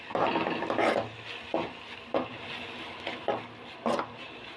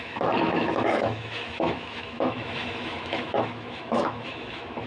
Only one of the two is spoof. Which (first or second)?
second